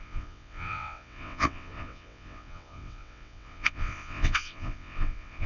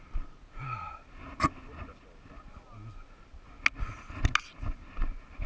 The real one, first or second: second